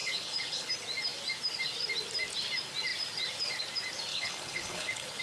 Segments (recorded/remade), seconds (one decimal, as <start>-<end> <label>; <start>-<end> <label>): 0.0-0.7 remade; 0.7-4.1 recorded; 4.1-5.2 remade